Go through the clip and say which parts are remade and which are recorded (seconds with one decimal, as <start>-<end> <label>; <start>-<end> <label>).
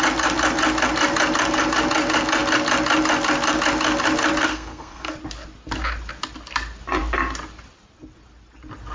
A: 0.0-4.5 recorded; 4.5-5.1 remade; 5.1-8.9 recorded